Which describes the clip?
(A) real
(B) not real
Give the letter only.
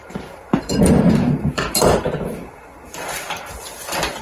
B